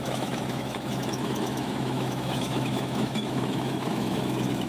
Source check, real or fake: fake